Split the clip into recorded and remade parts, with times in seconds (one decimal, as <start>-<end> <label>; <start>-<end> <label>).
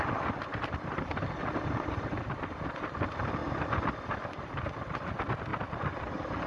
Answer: 0.0-0.5 recorded; 0.5-2.0 remade; 2.0-6.5 recorded